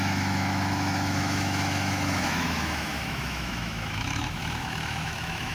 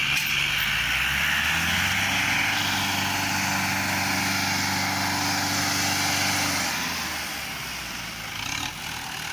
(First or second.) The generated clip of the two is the first